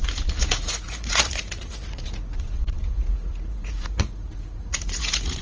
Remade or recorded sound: remade